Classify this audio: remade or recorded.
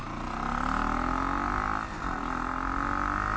recorded